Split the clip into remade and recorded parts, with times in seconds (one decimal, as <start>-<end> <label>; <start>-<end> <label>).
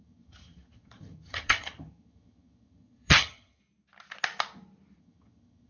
0.0-3.6 remade; 3.6-5.0 recorded; 5.0-5.7 remade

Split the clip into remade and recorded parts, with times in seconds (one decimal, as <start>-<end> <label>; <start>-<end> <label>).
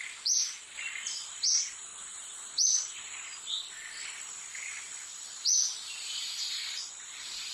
0.0-7.5 recorded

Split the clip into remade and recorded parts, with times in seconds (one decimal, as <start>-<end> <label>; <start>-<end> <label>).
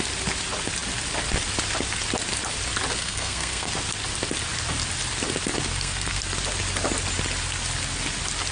0.0-3.0 recorded; 3.0-3.7 remade; 3.7-5.7 recorded; 5.7-6.2 remade; 6.2-8.5 recorded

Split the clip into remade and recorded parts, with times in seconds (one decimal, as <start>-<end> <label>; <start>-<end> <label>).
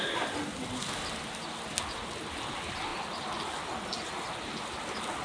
0.0-5.2 recorded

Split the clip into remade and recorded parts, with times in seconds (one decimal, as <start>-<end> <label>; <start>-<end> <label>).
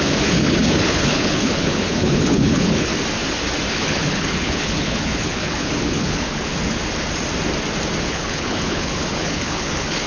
0.0-2.9 remade; 2.9-3.7 recorded; 3.7-6.5 remade; 6.5-8.1 recorded; 8.1-10.1 remade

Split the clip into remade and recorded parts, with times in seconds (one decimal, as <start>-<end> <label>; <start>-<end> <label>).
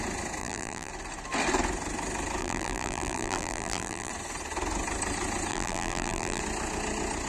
0.0-0.4 recorded; 0.4-0.9 remade; 0.9-2.4 recorded; 2.4-4.1 remade; 4.1-5.5 recorded; 5.5-6.4 remade; 6.4-7.3 recorded